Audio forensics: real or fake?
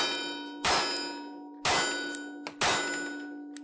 real